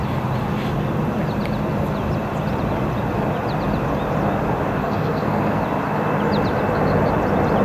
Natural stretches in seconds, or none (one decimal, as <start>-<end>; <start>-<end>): 0.0-4.8; 5.6-7.6